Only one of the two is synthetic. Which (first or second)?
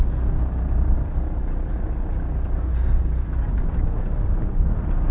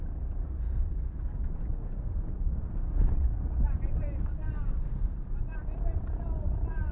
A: second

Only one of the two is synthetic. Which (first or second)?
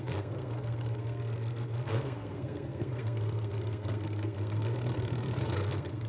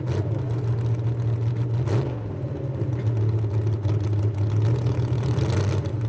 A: first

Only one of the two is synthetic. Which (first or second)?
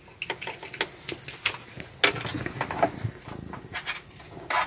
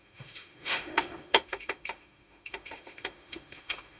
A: second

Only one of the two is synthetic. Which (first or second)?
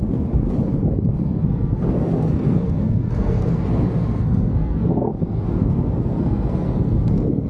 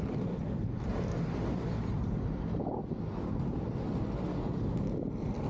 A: first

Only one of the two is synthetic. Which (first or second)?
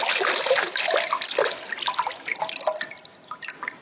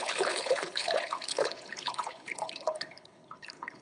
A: second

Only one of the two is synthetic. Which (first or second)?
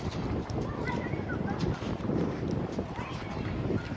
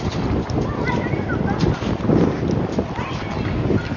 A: first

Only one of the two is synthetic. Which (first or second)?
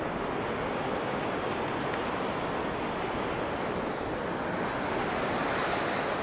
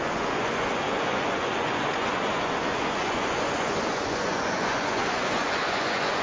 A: second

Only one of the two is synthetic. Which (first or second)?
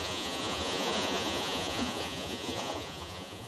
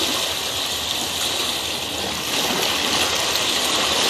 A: first